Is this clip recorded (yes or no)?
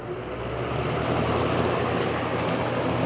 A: yes